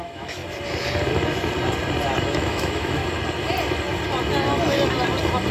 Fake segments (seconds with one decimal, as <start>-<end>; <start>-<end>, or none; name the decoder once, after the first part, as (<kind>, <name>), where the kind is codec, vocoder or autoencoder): 0.0-0.4 (autoencoder, DAC-VAE); 2.2-3.0